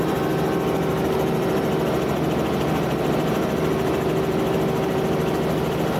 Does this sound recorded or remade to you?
recorded